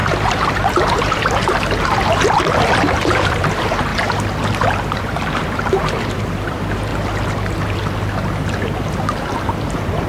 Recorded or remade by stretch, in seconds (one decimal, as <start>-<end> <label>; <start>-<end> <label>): 0.0-3.9 remade; 3.9-5.0 recorded; 5.0-6.9 remade; 6.9-10.1 recorded